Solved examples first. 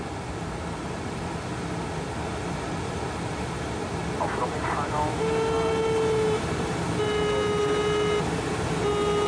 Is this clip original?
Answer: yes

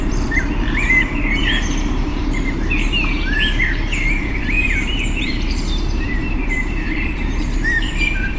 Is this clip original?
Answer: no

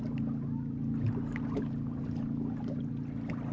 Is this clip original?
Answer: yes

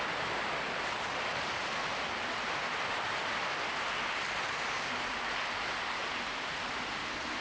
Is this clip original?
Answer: yes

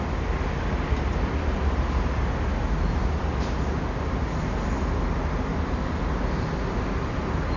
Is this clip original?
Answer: yes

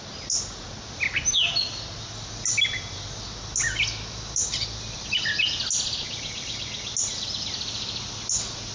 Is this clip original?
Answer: yes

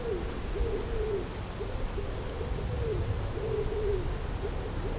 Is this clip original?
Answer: yes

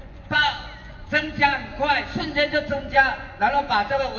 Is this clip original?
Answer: no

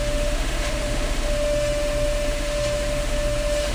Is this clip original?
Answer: no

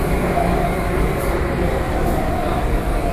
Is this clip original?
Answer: no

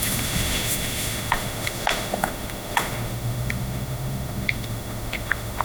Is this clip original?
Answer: no